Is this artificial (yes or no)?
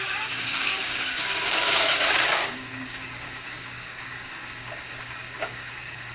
yes